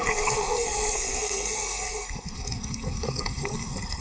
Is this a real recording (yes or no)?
no